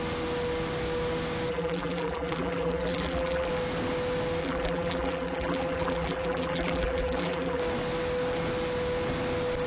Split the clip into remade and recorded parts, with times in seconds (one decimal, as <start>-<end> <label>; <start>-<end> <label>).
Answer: 0.0-1.5 recorded; 1.5-3.5 remade; 3.5-4.4 recorded; 4.4-7.6 remade; 7.6-9.7 recorded